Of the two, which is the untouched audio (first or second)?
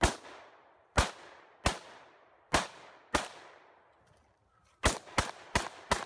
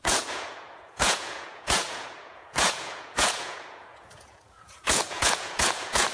first